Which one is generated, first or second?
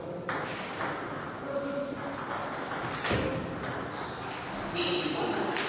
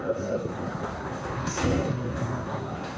second